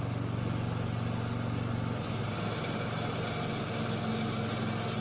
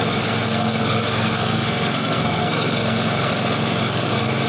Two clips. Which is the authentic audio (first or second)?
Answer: first